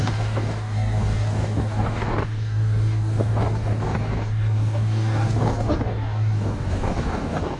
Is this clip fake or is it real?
fake